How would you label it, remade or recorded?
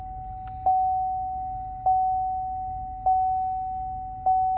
recorded